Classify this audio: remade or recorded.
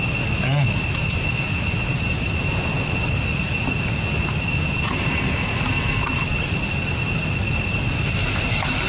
recorded